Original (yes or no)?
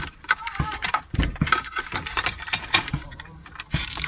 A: no